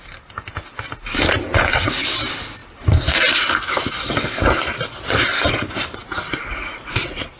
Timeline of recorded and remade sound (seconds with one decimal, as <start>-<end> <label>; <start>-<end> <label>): 0.0-7.4 recorded